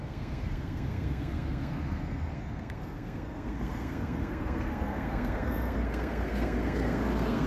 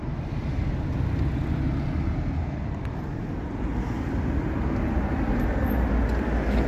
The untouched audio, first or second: second